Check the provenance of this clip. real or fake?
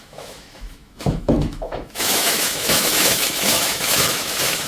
fake